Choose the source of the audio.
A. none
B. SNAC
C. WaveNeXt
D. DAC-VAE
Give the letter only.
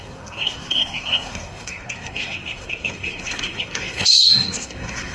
B